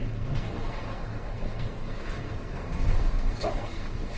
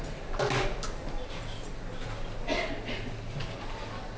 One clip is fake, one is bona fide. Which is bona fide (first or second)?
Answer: second